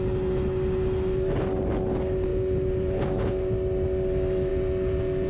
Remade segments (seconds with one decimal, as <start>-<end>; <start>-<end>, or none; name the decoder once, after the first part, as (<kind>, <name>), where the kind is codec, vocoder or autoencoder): 2.3-3.3 (vocoder, Vocos); 4.5-5.3